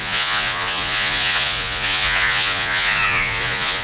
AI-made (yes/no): yes